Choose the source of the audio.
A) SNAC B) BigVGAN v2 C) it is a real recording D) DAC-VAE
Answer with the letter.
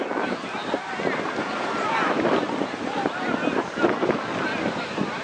C